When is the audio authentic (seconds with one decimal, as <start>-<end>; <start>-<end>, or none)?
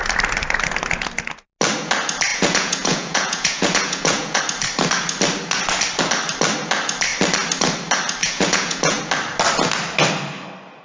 0.0-2.3; 4.4-8.2; 9.0-10.8